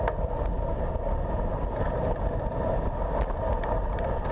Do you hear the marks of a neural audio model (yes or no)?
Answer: no